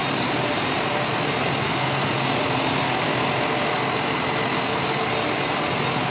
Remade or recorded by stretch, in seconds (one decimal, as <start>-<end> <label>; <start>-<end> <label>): 0.0-1.6 recorded; 1.6-2.1 remade; 2.1-6.1 recorded